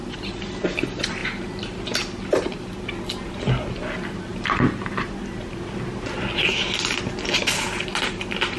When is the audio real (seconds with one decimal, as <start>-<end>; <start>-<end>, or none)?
0.0-4.3; 5.1-8.6